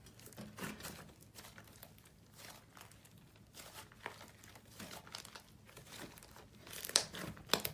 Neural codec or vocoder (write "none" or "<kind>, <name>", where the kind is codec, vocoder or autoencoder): none